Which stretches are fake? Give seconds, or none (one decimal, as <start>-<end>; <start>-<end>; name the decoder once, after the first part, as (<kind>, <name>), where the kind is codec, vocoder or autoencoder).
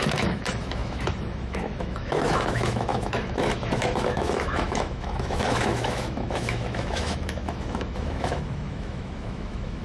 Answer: 0.0-9.8 (autoencoder, DAC-VAE)